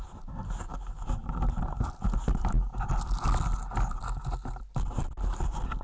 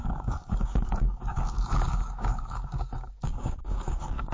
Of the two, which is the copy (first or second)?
second